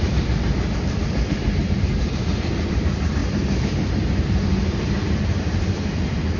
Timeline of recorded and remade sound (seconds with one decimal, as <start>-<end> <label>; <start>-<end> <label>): 0.0-6.4 remade